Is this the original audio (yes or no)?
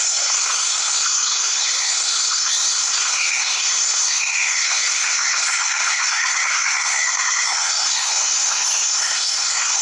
no